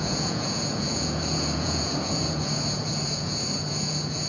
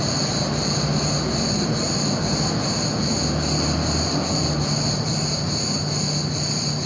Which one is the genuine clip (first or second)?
second